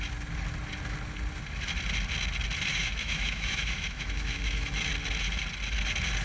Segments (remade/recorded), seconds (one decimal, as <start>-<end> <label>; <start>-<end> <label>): 0.0-2.7 recorded; 2.7-4.9 remade; 4.9-6.2 recorded